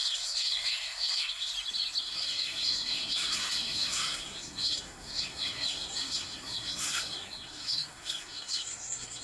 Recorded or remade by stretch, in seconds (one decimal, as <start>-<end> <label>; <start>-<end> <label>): 0.0-1.5 remade; 1.5-2.0 recorded; 2.0-9.2 remade